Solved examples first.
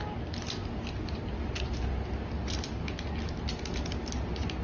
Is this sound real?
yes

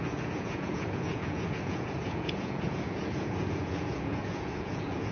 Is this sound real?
no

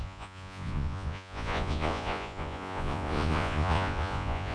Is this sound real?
no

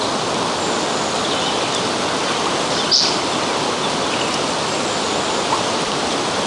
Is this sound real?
yes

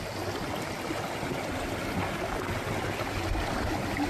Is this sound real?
yes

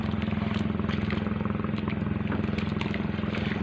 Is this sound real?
yes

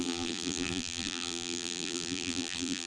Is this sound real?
no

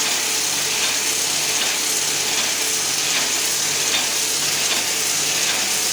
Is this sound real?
yes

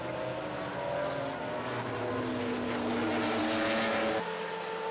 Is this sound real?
yes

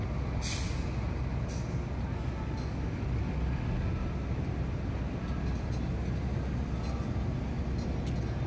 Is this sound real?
yes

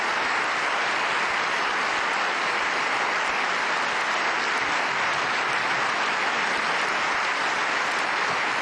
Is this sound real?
yes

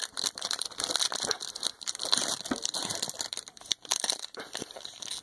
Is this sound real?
no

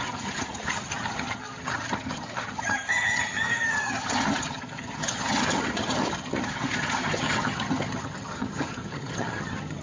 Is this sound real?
no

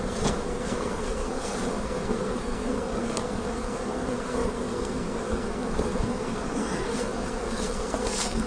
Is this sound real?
no